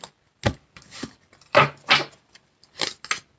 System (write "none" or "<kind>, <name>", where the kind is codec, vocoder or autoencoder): none